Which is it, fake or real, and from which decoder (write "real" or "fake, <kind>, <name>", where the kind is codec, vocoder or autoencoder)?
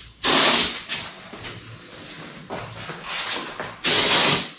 real